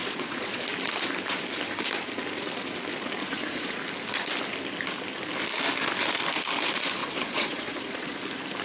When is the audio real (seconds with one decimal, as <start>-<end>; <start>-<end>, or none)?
0.6-3.2; 3.8-7.0; 8.2-8.6